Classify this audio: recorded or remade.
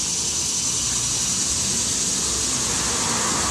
recorded